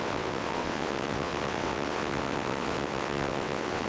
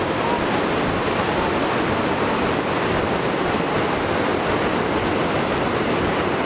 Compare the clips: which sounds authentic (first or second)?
second